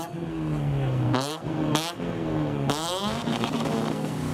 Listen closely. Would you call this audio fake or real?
fake